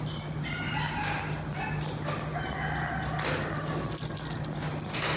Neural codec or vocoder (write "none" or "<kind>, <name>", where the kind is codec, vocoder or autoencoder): none